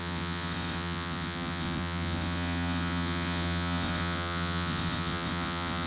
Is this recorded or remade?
remade